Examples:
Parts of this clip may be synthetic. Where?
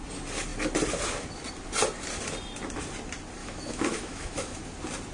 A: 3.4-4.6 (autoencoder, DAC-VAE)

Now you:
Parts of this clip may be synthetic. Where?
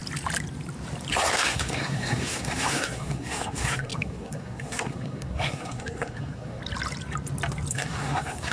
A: 1.1-6.6 (codec, SNAC); 7.7-8.5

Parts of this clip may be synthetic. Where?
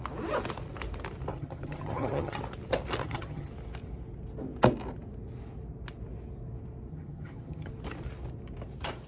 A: 1.3-2.4 (vocoder, HiFi-GAN); 3.0-3.5; 6.9-7.7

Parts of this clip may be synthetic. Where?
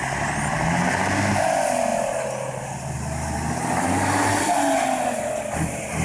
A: none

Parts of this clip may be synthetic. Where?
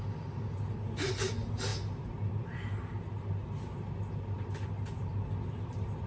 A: none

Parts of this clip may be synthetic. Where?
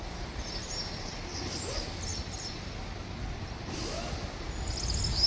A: none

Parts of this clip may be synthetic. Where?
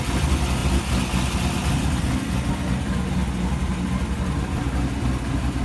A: none